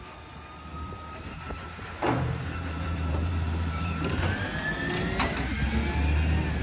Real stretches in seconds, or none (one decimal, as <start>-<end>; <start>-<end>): 0.0-2.0; 4.2-6.6